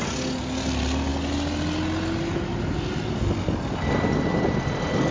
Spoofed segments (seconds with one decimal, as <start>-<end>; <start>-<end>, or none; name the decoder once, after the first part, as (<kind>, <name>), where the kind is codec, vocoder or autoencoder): none